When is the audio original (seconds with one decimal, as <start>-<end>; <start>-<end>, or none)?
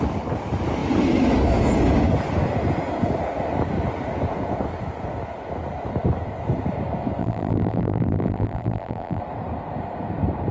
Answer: 0.0-7.2; 9.2-10.5